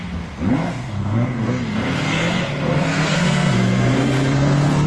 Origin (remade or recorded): remade